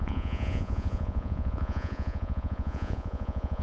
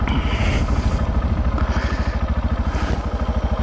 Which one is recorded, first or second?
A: second